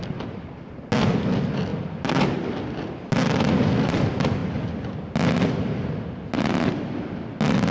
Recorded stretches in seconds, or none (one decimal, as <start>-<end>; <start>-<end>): 0.0-7.7

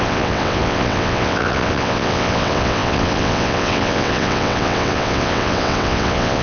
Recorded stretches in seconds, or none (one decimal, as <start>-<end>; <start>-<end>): none

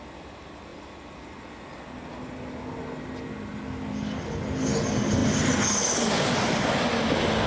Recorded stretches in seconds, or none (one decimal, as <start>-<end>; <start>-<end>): 0.0-7.5

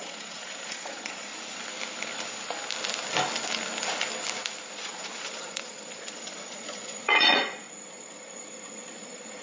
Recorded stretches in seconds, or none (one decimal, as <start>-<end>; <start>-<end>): 1.3-4.7

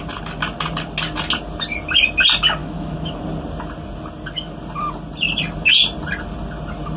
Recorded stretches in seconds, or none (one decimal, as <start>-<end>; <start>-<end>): 0.0-2.6; 3.2-7.0

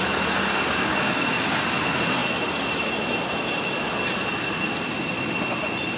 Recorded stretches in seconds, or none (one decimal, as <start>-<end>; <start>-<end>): 0.0-0.5; 1.6-6.0